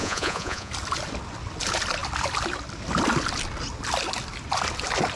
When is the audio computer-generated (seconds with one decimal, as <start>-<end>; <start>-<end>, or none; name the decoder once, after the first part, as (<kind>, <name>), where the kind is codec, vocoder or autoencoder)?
0.0-0.7 (vocoder, Vocos)